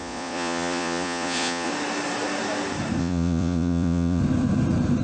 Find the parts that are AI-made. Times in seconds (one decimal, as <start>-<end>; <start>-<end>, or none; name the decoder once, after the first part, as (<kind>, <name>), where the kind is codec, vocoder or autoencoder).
0.0-1.7 (vocoder, Vocos); 3.0-4.2